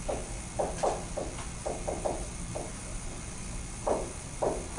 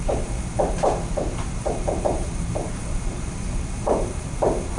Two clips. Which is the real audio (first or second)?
first